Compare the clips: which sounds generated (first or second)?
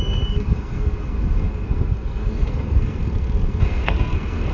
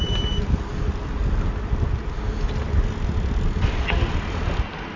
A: first